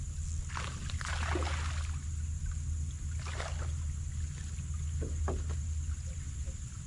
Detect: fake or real real